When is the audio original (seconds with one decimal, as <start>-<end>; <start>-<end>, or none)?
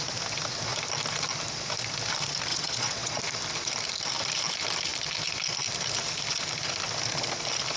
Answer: 0.0-2.5; 3.2-7.8